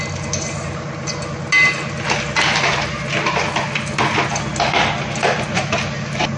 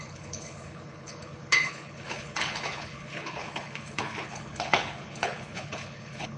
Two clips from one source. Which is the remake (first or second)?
second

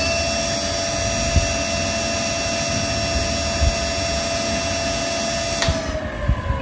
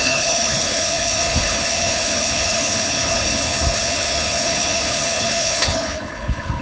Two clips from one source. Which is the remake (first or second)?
second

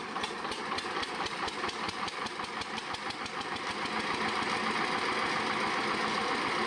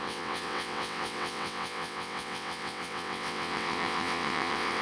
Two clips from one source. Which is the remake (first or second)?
second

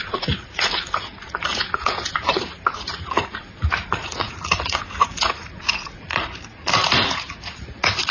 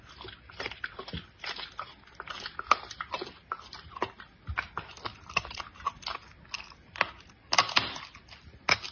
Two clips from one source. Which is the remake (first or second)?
first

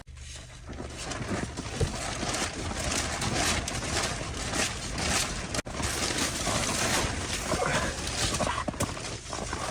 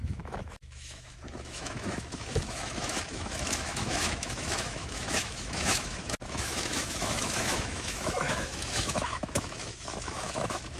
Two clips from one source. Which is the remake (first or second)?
second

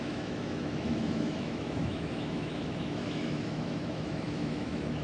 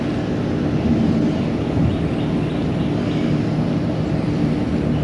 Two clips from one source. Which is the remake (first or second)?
first